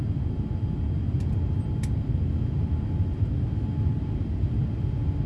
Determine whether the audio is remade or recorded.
recorded